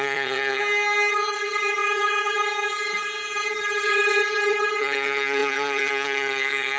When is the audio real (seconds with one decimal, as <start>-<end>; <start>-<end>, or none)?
0.6-1.1